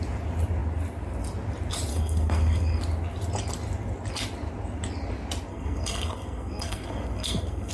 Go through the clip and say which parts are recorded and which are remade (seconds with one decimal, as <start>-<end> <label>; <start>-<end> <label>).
0.0-1.9 recorded; 1.9-2.8 remade; 2.8-5.5 recorded; 5.5-7.7 remade